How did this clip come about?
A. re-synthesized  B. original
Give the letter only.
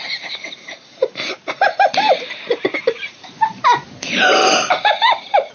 A